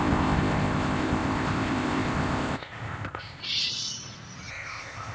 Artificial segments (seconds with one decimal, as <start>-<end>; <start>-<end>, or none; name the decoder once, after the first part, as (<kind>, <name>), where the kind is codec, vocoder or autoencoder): 0.0-3.4 (codec, ZipCodec); 4.5-5.1